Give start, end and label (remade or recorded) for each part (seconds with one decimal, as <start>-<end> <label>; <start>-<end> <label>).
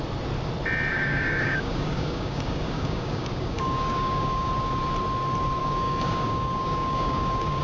0.0-0.9 recorded; 0.9-4.5 remade; 4.5-5.6 recorded; 5.6-7.6 remade